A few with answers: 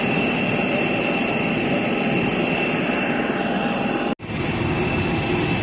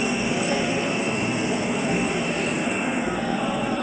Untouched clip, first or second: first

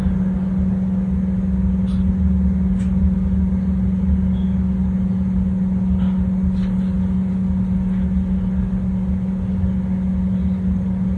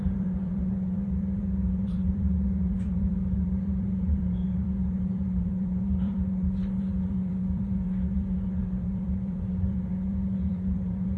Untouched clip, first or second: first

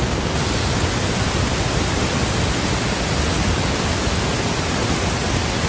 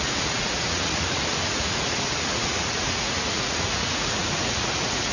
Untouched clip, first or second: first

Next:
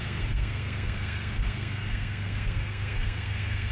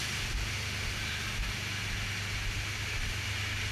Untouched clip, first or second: second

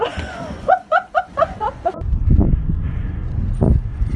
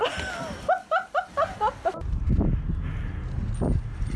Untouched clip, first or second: second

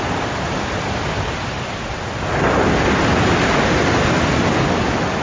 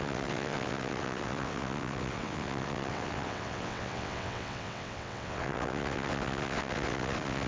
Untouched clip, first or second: first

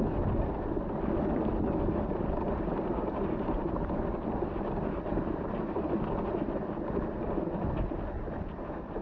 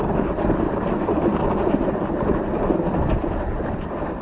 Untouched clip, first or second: first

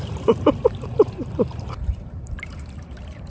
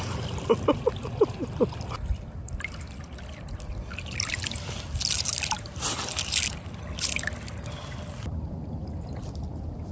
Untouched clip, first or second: second